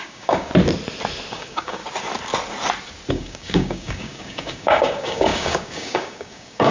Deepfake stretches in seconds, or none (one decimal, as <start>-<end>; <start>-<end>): 0.0-0.5; 1.3-1.8; 3.1-6.7